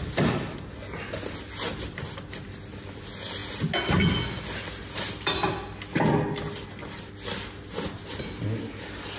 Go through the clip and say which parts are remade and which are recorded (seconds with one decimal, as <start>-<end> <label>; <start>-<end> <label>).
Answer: 0.0-9.2 recorded